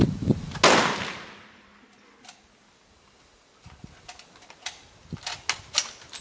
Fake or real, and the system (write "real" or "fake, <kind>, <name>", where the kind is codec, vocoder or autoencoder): real